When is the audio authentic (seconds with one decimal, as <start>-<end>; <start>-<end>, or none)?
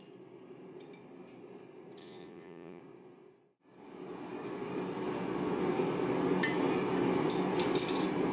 0.0-2.0; 2.8-8.3